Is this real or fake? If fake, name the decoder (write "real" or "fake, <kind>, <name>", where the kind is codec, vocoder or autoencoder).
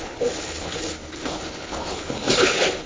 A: fake, codec, HILCodec